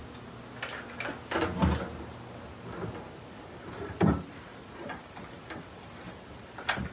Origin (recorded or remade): recorded